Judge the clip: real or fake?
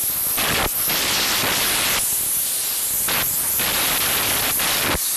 real